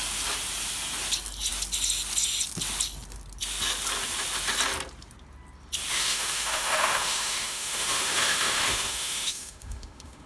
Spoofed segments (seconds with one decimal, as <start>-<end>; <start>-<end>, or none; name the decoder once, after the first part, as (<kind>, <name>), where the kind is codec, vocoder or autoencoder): 5.9-10.3 (autoencoder, DAC-VAE)